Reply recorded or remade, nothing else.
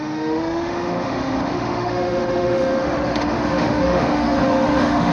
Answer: remade